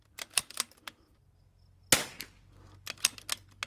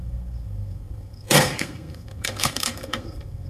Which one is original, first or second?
first